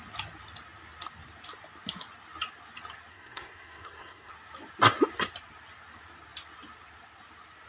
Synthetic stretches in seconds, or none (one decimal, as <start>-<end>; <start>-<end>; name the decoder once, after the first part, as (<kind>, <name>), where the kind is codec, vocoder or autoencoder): 3.1-4.3 (codec, SNAC)